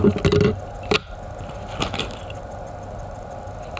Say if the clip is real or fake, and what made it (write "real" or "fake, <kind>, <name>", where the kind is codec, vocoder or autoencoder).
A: real